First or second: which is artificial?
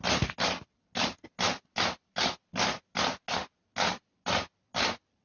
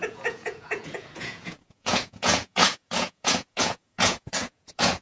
second